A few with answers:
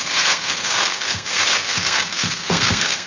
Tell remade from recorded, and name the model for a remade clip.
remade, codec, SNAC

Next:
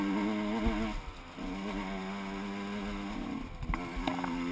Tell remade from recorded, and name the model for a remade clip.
recorded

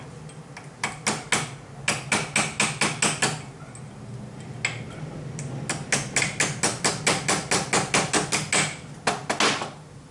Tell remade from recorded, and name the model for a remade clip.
recorded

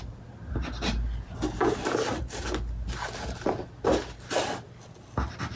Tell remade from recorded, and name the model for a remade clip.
recorded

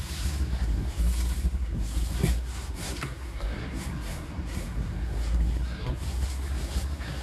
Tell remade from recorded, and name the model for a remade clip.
remade, codec, SNAC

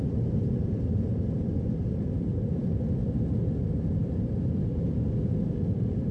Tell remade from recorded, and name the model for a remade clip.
recorded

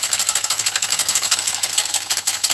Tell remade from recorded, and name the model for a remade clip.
remade, codec, SNAC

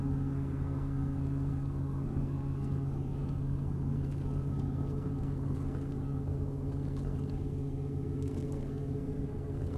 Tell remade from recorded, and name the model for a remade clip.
remade, codec, SNAC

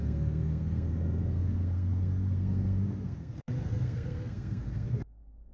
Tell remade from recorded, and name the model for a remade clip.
remade, codec, SNAC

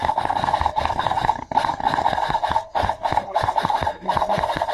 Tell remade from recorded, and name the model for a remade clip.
remade, codec, SNAC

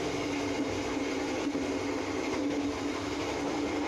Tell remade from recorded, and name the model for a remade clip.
recorded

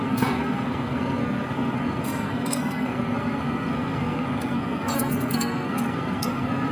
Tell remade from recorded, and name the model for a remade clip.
remade, codec, SNAC